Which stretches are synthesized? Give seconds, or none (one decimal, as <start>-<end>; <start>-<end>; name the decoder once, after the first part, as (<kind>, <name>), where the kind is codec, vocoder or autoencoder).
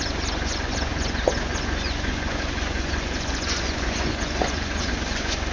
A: 0.0-5.5 (vocoder, Vocos)